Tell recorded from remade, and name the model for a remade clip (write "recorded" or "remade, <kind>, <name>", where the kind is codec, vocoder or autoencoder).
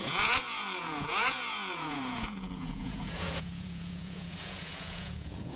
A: remade, vocoder, Vocos